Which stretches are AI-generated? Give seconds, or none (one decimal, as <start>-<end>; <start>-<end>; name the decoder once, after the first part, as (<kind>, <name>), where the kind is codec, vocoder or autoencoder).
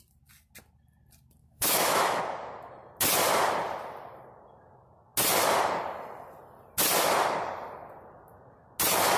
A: 1.4-2.2 (autoencoder, DAC-VAE)